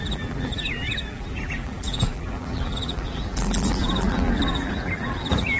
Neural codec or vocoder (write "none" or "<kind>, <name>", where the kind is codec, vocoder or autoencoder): vocoder, BigVGAN v2